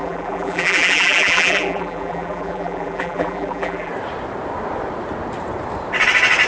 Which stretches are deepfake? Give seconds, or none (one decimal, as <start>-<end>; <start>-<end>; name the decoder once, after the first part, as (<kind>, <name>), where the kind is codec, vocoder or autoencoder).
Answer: 0.0-3.9 (vocoder, BigVGAN v2)